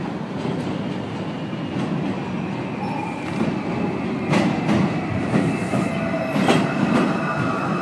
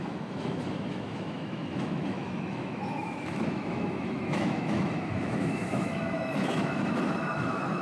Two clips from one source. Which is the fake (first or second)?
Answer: second